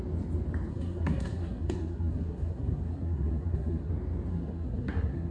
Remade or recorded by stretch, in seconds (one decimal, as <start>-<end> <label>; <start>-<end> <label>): 0.0-0.7 recorded; 0.7-3.9 remade; 3.9-4.3 recorded; 4.3-5.3 remade